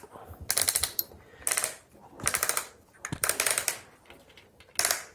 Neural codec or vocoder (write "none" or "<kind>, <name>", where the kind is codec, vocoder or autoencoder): vocoder, BigVGAN v2